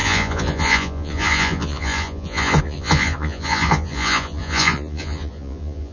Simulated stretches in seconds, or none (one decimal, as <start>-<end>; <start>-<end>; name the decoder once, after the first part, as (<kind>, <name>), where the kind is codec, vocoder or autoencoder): 0.0-5.9 (vocoder, Vocos)